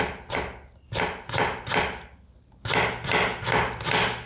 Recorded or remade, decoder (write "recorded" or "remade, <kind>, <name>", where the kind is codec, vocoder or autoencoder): recorded